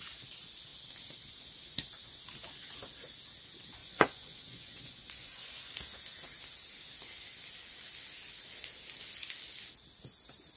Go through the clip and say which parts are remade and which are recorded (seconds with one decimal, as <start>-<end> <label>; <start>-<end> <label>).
0.0-3.8 recorded; 3.8-5.7 remade; 5.7-10.6 recorded